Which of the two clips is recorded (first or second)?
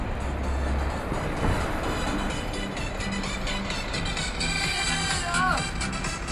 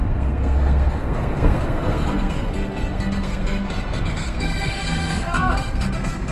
first